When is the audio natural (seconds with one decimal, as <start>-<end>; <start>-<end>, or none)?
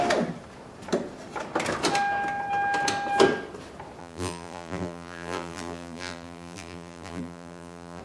0.0-4.0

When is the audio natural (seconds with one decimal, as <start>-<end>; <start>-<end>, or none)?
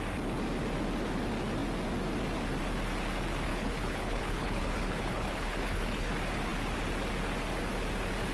0.0-3.5; 6.1-8.3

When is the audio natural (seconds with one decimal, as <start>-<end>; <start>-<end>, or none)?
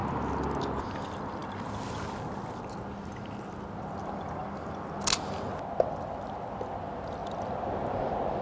0.0-8.4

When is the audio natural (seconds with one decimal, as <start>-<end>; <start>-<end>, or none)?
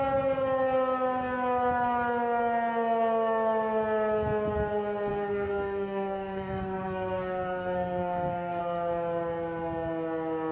0.0-5.1; 8.6-10.5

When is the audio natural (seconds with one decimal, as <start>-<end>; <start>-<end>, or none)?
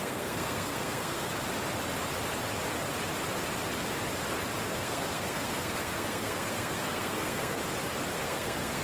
1.3-4.7; 7.6-8.2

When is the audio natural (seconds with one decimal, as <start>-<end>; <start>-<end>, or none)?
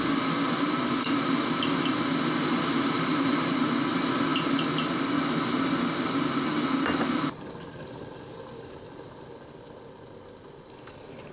0.0-11.3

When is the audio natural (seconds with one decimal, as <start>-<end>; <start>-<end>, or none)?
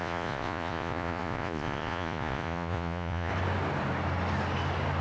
3.3-5.0